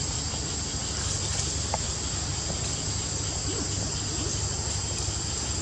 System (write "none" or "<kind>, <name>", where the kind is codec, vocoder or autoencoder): none